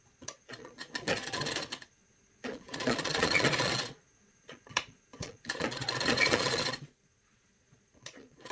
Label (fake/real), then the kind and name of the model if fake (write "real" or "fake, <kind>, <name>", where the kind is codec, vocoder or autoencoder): fake, vocoder, Vocos